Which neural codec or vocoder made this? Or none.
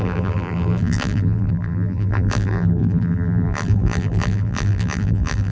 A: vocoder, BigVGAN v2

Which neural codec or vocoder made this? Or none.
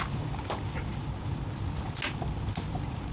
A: none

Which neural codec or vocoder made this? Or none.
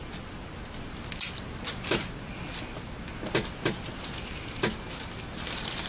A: none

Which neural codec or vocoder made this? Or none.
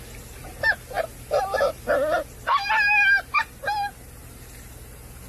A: none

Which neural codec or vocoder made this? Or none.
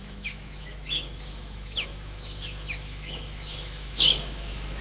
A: autoencoder, DAC-VAE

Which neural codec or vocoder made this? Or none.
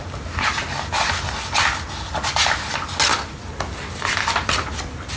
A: none